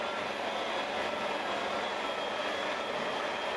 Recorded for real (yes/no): yes